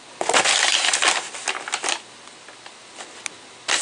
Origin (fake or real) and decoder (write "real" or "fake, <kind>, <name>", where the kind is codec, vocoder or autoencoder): real